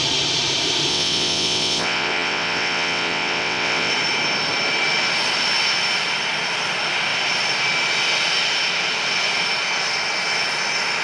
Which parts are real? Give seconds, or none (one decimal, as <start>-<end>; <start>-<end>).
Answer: 0.0-0.9; 3.9-11.0

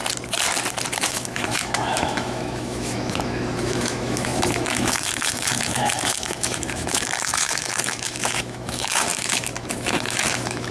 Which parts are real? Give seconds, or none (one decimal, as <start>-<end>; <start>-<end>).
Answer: 0.0-1.0

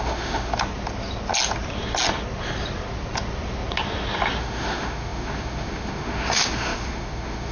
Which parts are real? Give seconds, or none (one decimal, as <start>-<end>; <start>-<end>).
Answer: 0.5-4.4

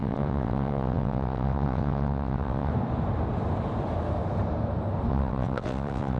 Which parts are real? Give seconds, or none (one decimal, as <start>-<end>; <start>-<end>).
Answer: 2.7-5.1

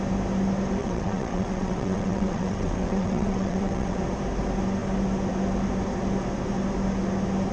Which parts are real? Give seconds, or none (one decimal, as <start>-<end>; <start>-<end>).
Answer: 0.0-0.8; 4.0-7.5

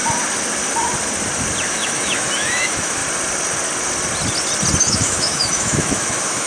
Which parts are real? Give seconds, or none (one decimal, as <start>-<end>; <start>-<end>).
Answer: 0.0-1.7; 3.0-4.8

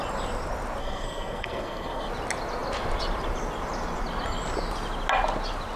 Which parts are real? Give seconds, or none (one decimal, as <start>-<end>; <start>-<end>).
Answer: 0.0-0.8; 2.1-5.8

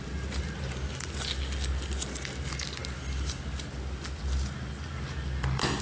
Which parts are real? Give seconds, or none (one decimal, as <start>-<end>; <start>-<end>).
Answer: 0.0-5.8